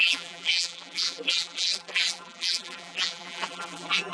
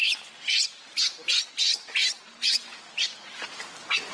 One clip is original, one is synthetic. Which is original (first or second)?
second